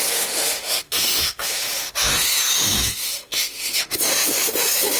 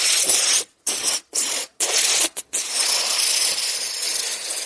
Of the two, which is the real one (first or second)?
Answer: second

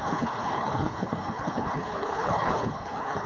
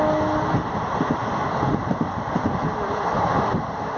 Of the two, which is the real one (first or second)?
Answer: second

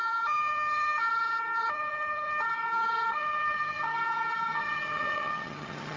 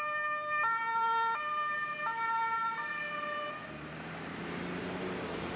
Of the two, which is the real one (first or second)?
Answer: second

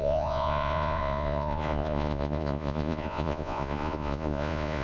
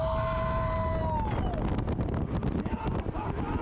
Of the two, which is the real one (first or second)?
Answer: second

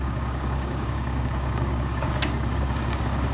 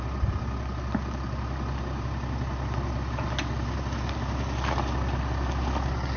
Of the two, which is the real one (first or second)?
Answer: second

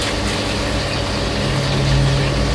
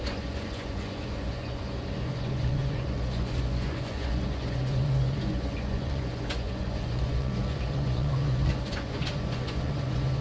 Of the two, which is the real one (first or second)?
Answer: first